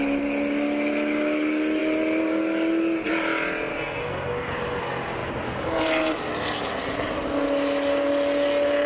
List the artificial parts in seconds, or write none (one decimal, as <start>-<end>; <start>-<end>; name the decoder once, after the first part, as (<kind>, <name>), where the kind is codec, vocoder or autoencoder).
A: 3.7-4.5 (codec, SNAC)

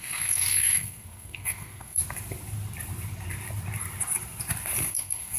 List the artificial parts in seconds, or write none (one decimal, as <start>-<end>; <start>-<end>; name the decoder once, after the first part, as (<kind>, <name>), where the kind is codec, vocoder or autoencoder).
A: 0.0-2.0 (codec, SNAC); 4.9-5.4

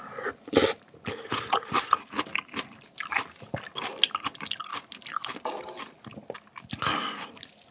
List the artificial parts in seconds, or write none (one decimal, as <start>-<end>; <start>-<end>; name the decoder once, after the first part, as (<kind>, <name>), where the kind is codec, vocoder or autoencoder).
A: none

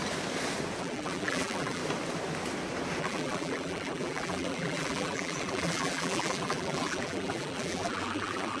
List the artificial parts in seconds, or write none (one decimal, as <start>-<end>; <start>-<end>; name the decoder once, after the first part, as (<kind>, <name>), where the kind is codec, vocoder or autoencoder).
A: 0.8-1.8 (vocoder, BigVGAN v2); 3.0-8.6

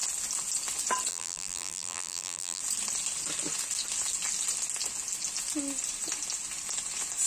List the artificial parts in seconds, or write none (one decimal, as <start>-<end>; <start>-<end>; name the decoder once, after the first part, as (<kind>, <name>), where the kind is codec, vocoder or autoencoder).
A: 1.1-2.6 (vocoder, BigVGAN v2)

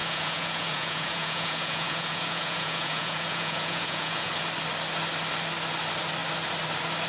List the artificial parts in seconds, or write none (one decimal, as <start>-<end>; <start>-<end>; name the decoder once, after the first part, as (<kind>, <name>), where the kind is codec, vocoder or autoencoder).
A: 0.0-4.3 (vocoder, Vocos)

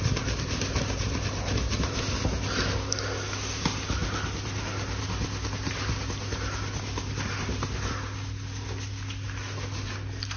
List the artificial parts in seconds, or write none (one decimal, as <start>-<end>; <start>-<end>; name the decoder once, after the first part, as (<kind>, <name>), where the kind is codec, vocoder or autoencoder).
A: none